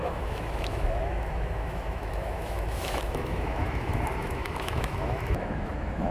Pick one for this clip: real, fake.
fake